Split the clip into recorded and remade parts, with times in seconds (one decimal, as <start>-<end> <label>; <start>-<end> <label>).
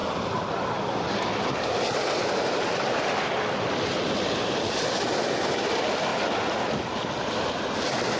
0.0-8.2 recorded